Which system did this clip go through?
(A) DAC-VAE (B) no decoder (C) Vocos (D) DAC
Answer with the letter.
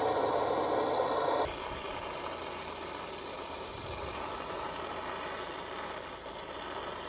B